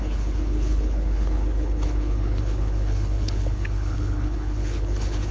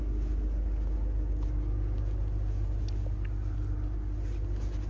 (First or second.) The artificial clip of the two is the first